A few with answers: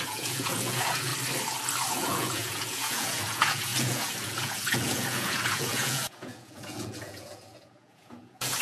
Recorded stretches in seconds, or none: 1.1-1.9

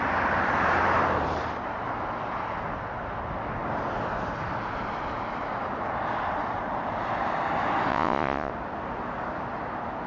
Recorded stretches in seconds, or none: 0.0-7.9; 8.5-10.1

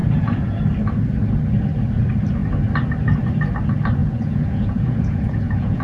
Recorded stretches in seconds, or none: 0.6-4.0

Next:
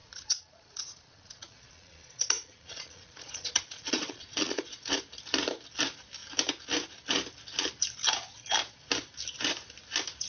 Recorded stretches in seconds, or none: 4.9-10.3

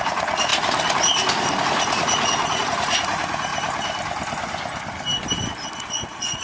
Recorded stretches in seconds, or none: 0.5-1.6; 3.5-5.8

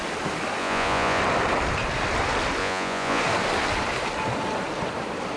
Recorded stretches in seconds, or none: 0.0-0.6; 1.2-2.6; 3.2-5.4